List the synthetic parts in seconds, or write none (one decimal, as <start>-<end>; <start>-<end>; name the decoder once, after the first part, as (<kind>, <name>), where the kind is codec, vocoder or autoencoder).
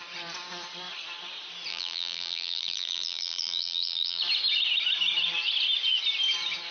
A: 1.7-4.2 (vocoder, BigVGAN v2)